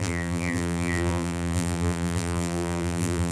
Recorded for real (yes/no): no